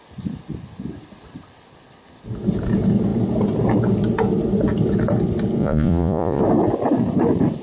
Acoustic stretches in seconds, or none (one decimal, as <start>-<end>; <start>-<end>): 0.0-5.6; 6.4-7.6

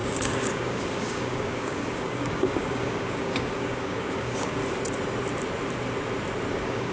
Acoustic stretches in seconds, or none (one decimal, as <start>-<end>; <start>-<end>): 4.6-6.5

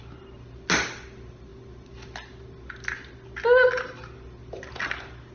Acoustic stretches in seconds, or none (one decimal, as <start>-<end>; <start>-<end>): 0.0-5.3

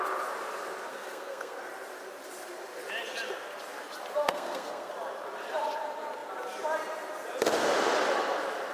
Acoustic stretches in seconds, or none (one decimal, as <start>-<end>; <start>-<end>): 0.0-0.9; 1.6-4.2; 4.9-8.7

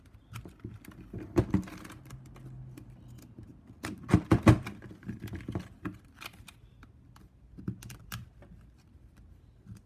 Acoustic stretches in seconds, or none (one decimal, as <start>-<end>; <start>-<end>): 0.0-9.9

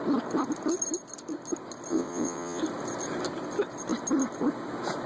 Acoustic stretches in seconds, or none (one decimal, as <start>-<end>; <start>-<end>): 0.0-1.9; 2.6-5.1

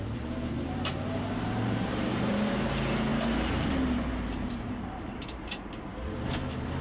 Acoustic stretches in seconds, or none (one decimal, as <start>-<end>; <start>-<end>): 3.1-4.3; 5.9-6.8